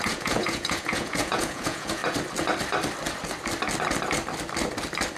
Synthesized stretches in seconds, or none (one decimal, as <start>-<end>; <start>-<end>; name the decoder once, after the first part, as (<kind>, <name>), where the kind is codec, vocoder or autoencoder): 0.0-2.0 (vocoder, Vocos)